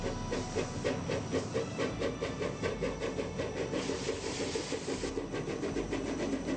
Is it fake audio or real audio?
real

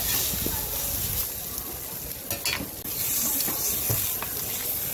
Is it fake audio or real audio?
real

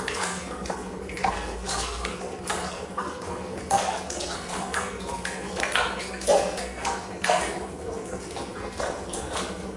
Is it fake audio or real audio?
fake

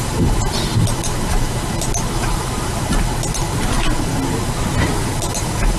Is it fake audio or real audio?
real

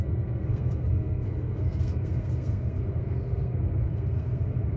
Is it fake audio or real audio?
fake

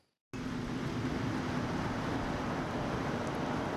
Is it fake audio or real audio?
real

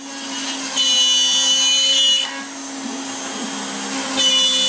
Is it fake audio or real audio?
real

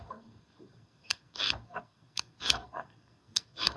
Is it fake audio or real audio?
fake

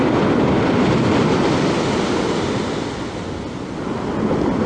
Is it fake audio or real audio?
real